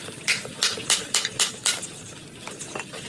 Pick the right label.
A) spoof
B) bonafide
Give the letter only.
B